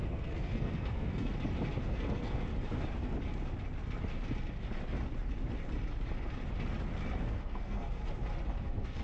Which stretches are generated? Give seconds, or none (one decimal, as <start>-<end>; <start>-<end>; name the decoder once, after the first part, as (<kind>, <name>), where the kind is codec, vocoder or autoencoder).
0.0-1.3 (codec, SNAC); 1.8-2.5; 7.2-8.0; 8.6-9.0